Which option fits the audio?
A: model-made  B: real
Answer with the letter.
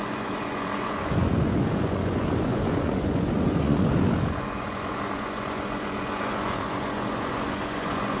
A